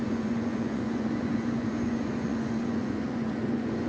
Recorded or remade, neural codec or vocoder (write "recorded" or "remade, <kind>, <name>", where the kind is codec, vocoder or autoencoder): remade, vocoder, Vocos